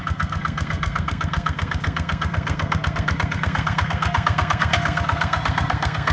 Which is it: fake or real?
fake